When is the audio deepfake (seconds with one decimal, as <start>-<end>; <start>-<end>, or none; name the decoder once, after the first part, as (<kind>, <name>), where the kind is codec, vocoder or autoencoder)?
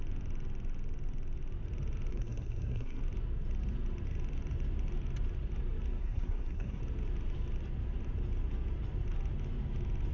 2.1-3.0 (codec, SNAC); 6.0-6.8